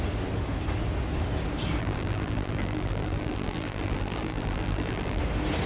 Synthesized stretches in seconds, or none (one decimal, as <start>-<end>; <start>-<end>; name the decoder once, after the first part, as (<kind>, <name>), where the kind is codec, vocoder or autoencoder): 1.8-5.2 (vocoder, BigVGAN v2)